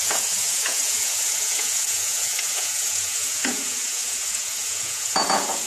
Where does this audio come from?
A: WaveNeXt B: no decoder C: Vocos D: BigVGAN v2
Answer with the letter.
C